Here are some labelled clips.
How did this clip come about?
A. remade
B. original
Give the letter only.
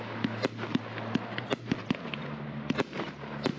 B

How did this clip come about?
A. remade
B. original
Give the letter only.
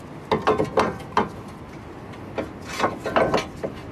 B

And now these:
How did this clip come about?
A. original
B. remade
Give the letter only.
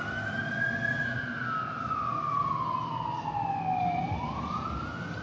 A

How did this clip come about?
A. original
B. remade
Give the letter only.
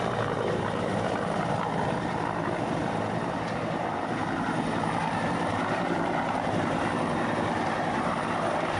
B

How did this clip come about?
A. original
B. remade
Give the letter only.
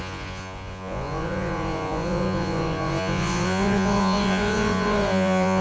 B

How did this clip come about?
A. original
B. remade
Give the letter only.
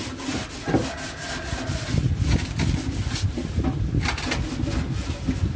A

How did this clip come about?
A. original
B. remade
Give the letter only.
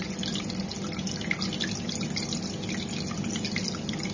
A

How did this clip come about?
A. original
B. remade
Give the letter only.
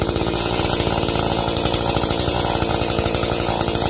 B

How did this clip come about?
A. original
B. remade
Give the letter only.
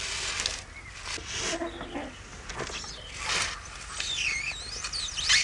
A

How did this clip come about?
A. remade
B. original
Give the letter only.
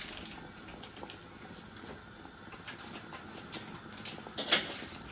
B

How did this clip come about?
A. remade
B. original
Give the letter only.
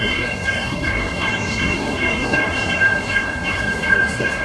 A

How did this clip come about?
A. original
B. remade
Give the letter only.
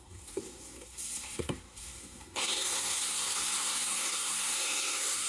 B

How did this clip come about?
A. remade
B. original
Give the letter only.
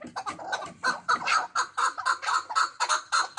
B